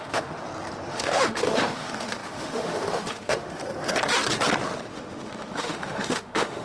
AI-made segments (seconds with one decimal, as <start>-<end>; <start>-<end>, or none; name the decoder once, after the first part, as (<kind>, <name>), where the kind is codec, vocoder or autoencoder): 0.0-0.4 (autoencoder, DAC-VAE); 0.9-3.6; 4.9-6.6